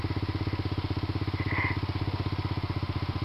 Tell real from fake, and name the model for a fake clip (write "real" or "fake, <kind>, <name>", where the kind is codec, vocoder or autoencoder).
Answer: real